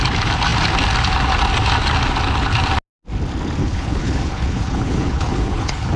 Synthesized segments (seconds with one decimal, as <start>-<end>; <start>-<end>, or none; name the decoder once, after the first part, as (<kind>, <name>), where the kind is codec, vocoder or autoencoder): 3.6-6.0 (codec, HILCodec)